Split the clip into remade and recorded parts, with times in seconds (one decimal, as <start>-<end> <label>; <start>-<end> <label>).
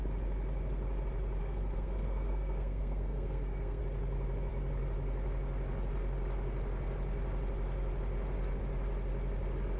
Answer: 0.0-1.4 recorded; 1.4-3.8 remade; 3.8-9.8 recorded